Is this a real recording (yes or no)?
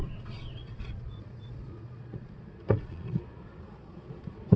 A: no